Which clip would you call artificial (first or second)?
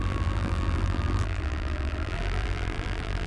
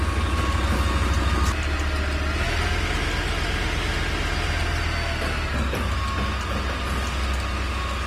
first